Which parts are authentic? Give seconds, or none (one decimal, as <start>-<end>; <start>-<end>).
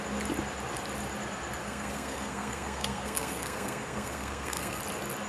0.0-1.6; 4.8-5.3